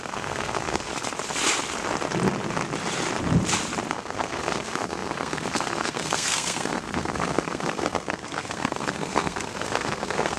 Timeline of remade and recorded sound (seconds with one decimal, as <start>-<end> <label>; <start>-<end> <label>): 0.0-0.9 remade; 0.9-3.9 recorded; 3.9-10.4 remade